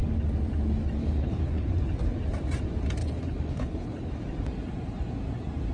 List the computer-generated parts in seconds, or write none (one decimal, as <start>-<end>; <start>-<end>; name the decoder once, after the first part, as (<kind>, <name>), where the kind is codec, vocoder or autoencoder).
1.0-1.7 (codec, HILCodec); 3.0-4.1